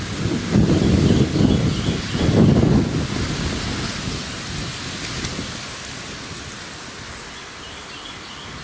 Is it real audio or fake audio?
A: real